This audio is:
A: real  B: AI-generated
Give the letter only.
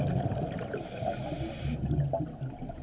A